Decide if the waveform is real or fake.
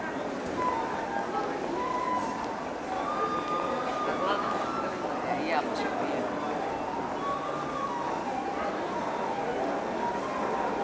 real